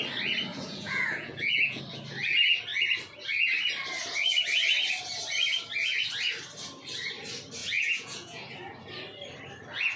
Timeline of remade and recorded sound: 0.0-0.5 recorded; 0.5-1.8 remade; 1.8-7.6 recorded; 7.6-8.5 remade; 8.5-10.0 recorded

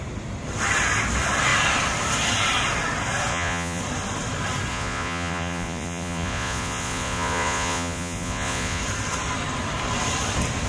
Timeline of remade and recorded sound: 0.0-3.3 recorded; 3.3-3.8 remade; 3.8-4.7 recorded; 4.7-8.8 remade; 8.8-10.7 recorded

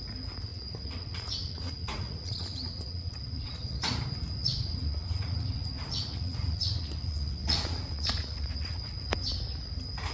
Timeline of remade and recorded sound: 0.0-0.5 recorded; 0.5-4.0 remade; 4.0-4.4 recorded; 4.4-9.2 remade; 9.2-10.1 recorded

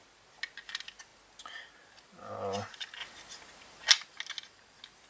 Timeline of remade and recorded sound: 0.0-5.1 recorded